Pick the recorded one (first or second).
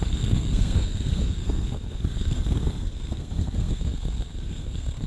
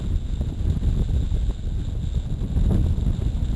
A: second